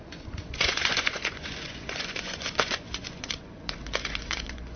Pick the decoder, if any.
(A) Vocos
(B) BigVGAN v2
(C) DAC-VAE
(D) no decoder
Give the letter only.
A